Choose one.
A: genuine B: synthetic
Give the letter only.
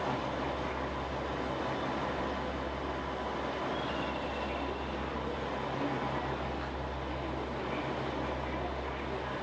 A